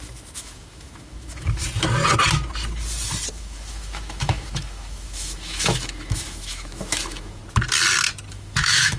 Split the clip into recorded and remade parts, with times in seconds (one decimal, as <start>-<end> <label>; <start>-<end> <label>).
0.0-1.6 remade; 1.6-3.3 recorded; 3.3-7.4 remade; 7.4-8.3 recorded; 8.3-9.0 remade